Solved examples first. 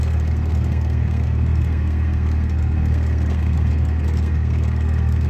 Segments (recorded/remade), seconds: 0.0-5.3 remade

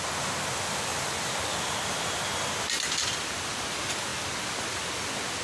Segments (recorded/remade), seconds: 0.0-5.4 recorded

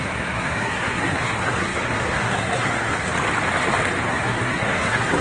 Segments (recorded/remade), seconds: 0.0-3.1 remade; 3.1-4.1 recorded; 4.1-5.2 remade